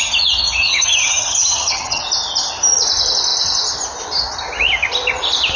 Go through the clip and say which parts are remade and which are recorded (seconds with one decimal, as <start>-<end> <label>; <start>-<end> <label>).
0.0-0.7 recorded; 0.7-2.0 remade; 2.0-5.6 recorded